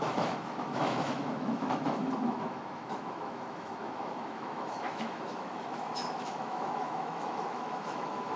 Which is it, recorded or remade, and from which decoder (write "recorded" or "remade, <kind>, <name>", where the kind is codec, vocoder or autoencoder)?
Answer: remade, autoencoder, DAC-VAE